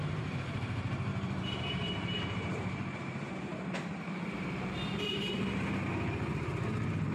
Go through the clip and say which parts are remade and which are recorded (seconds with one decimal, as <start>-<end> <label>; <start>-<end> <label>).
0.0-7.1 remade